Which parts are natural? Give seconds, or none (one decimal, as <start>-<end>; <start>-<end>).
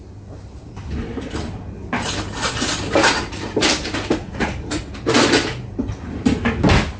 0.0-4.2; 4.8-7.0